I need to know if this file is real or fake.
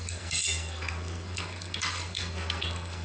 fake